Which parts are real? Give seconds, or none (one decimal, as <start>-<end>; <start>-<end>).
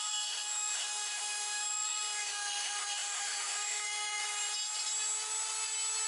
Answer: 4.2-6.1